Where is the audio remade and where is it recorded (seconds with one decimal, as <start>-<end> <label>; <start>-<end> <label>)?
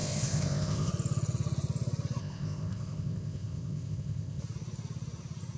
0.0-0.9 remade; 0.9-2.2 recorded; 2.2-4.4 remade; 4.4-5.6 recorded